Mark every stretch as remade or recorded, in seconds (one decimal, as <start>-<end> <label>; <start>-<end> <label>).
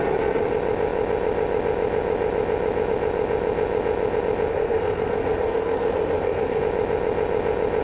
0.0-4.5 recorded; 4.5-6.6 remade; 6.6-7.8 recorded